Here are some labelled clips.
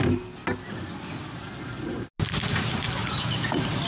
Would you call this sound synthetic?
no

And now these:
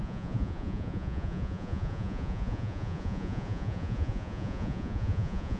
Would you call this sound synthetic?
yes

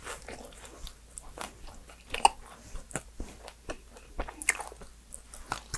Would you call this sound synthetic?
no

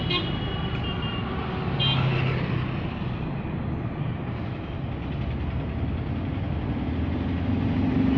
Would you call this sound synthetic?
no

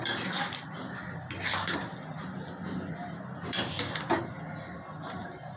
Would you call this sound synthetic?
yes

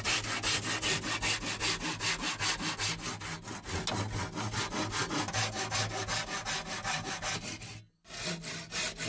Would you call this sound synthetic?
no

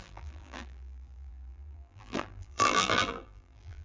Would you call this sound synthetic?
yes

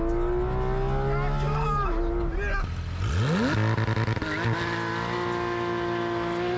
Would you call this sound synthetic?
no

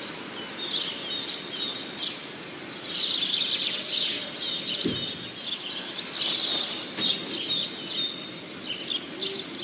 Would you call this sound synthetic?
no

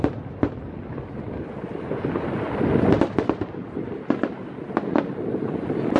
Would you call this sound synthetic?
no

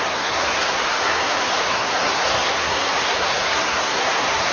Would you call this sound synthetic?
yes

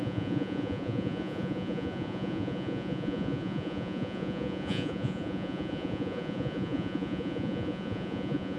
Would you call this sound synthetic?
yes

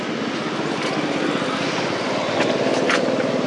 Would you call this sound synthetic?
no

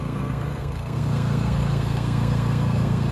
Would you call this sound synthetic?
yes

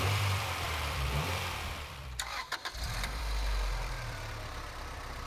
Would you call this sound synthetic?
yes